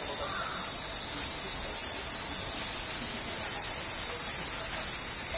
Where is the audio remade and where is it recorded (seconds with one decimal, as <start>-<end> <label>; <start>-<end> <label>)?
0.0-5.4 recorded